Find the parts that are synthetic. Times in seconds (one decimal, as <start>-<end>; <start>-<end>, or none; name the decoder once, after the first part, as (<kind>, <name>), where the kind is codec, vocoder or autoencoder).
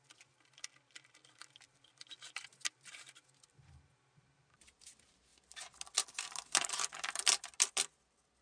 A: none